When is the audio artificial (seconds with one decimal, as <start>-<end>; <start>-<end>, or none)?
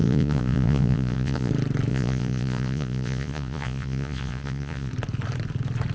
0.0-1.5; 1.9-4.9